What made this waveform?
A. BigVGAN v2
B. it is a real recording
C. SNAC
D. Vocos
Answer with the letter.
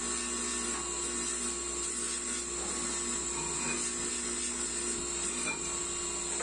B